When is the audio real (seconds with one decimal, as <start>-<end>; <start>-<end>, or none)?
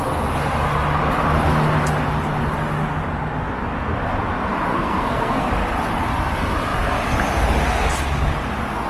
0.0-4.7; 5.5-8.9